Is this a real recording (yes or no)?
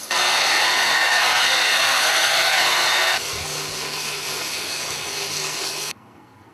no